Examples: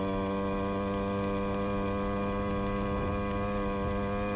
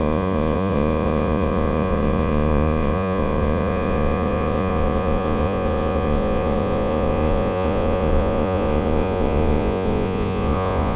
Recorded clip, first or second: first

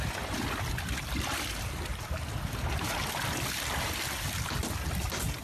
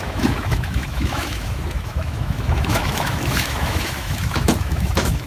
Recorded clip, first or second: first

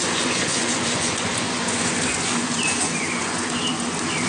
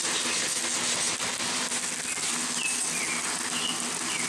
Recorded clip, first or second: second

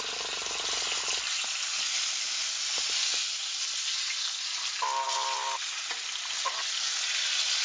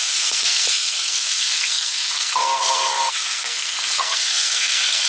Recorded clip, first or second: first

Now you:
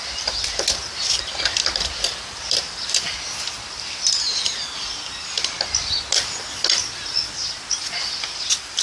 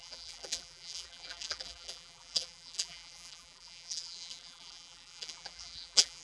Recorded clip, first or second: first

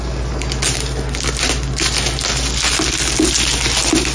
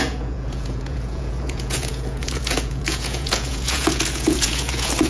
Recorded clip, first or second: first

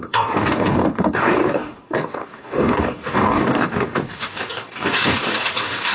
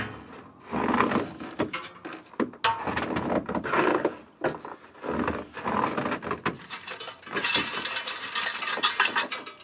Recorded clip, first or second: second